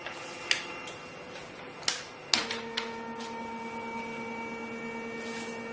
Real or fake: real